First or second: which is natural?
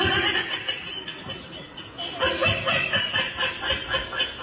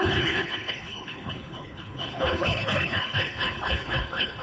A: first